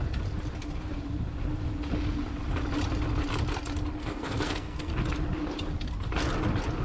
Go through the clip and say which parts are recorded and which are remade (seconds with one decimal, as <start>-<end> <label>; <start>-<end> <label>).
0.0-4.0 recorded; 4.0-4.9 remade; 4.9-6.8 recorded